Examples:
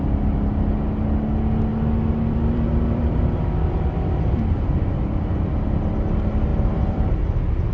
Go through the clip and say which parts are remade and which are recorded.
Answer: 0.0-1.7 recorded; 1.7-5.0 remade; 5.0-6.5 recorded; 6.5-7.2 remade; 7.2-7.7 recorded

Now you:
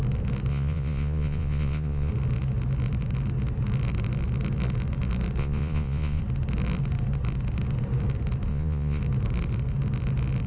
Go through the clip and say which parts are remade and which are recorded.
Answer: 0.0-0.5 recorded; 0.5-2.1 remade; 2.1-5.4 recorded; 5.4-6.2 remade; 6.2-8.5 recorded; 8.5-9.0 remade; 9.0-10.5 recorded

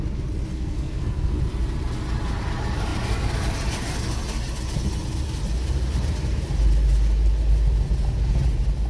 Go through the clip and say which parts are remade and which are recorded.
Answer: 0.0-0.5 recorded; 0.5-1.4 remade; 1.4-8.9 recorded

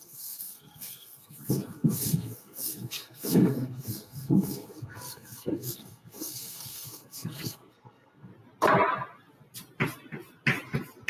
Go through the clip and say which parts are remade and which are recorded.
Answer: 0.0-8.3 remade; 8.3-11.1 recorded

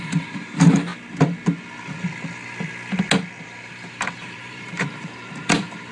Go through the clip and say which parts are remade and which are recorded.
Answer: 0.0-0.9 remade; 0.9-3.4 recorded; 3.4-5.9 remade

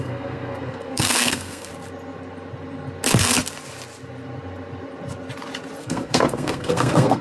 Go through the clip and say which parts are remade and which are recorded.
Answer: 0.0-1.7 remade; 1.7-5.8 recorded; 5.8-7.2 remade

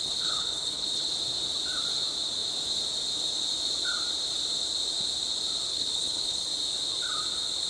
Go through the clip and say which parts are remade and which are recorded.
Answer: 0.0-1.1 remade; 1.1-5.7 recorded; 5.7-6.5 remade; 6.5-7.7 recorded